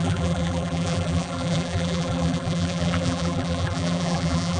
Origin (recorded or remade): remade